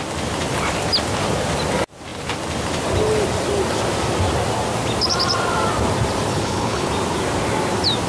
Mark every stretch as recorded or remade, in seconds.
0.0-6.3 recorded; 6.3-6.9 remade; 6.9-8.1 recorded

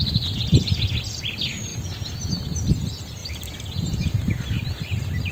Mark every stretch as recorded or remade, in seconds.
0.0-3.2 recorded; 3.2-4.5 remade; 4.5-5.3 recorded

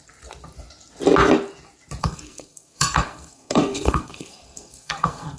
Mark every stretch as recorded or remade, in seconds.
0.0-2.0 recorded; 2.0-5.4 remade

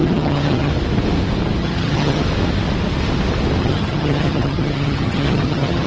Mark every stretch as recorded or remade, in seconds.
0.0-0.7 remade; 0.7-1.6 recorded; 1.6-2.2 remade; 2.2-3.6 recorded; 3.6-5.9 remade

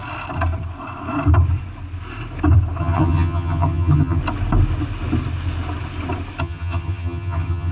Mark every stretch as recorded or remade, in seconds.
0.0-2.8 recorded; 2.8-4.2 remade; 4.2-6.4 recorded; 6.4-7.7 remade

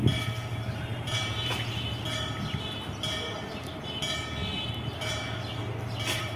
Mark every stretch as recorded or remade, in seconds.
0.0-0.9 recorded; 0.9-1.5 remade; 1.5-3.3 recorded; 3.3-4.0 remade; 4.0-6.4 recorded